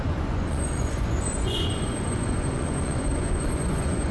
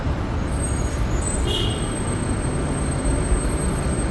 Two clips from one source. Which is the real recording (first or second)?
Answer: second